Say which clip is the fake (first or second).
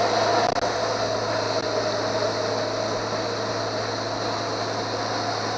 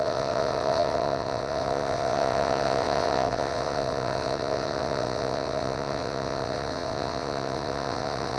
second